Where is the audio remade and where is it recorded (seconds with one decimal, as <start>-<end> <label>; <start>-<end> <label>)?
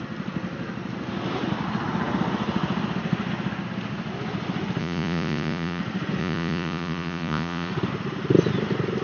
0.0-4.8 recorded; 4.8-5.8 remade; 5.8-6.2 recorded; 6.2-7.7 remade; 7.7-9.0 recorded